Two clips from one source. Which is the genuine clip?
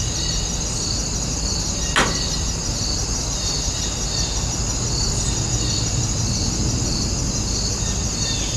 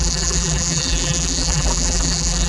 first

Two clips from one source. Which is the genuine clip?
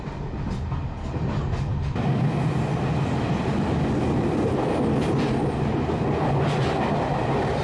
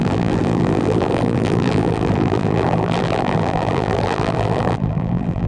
first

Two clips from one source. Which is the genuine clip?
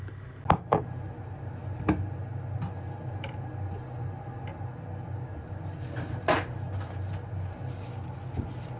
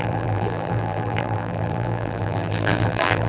first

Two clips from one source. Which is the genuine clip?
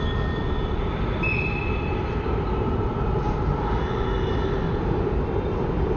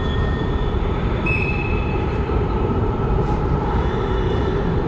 first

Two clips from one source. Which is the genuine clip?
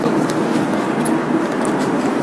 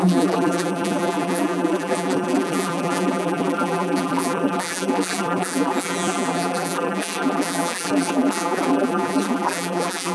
first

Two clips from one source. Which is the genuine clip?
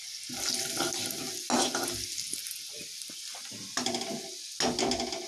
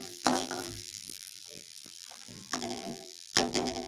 first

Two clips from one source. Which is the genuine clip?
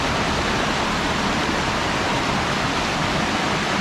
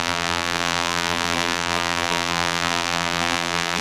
first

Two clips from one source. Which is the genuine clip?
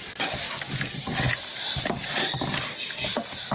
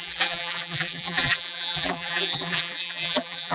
first